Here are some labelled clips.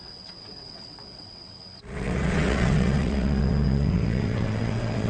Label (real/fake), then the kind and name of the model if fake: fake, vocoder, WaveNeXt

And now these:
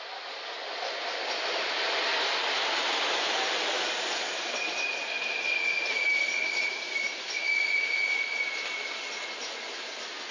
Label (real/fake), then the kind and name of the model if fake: real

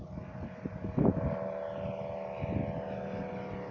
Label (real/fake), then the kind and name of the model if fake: real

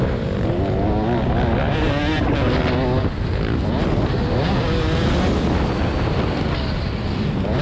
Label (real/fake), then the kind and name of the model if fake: real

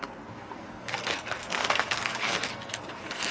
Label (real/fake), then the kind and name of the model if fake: fake, codec, SNAC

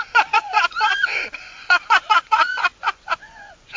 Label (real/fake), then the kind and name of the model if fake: fake, vocoder, Vocos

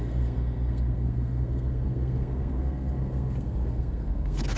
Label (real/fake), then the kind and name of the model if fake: fake, codec, SNAC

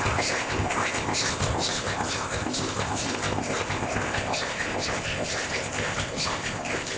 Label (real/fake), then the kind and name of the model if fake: fake, codec, ZipCodec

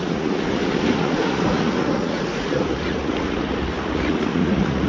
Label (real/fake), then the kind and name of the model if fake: fake, vocoder, Vocos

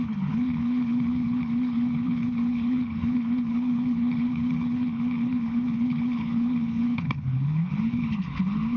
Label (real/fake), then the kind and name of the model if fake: fake, codec, HILCodec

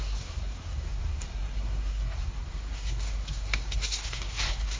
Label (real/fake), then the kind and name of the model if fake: fake, codec, SNAC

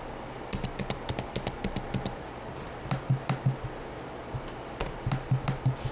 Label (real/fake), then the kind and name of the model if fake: real